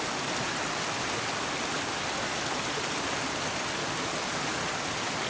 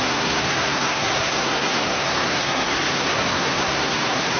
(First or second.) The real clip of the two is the first